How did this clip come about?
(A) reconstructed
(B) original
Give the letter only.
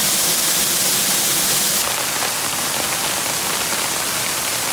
B